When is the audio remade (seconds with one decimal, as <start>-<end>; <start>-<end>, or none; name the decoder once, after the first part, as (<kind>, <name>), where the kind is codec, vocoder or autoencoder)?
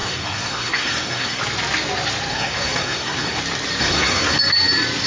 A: 0.0-1.4 (codec, SNAC); 2.3-3.4; 3.8-4.4